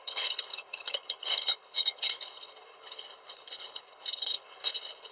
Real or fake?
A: fake